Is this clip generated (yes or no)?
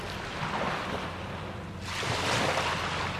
no